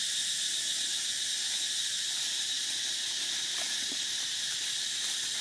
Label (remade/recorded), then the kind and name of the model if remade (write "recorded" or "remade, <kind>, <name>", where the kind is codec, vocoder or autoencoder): recorded